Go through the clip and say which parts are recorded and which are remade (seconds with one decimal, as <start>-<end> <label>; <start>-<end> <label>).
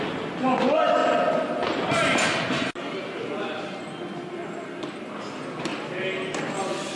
0.0-7.0 recorded